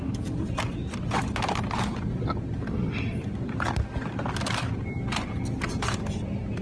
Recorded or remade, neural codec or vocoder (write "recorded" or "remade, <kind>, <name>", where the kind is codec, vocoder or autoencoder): recorded